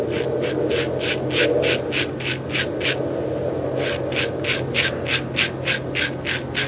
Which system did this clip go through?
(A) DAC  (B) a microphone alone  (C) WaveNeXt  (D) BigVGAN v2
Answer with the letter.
B